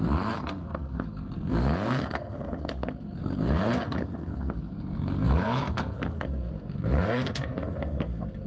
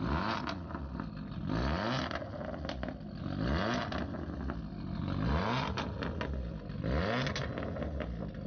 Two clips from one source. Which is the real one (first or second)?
second